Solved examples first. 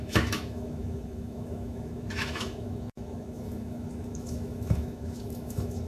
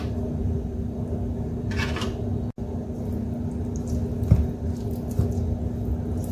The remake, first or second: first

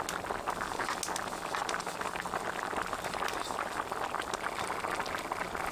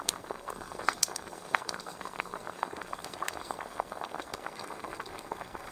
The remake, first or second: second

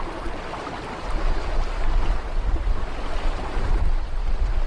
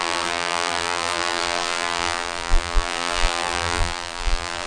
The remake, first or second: second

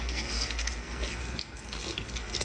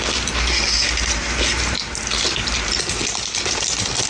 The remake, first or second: first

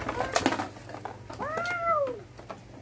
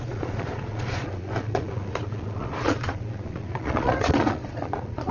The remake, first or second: second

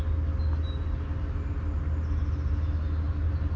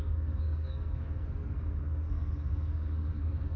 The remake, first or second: second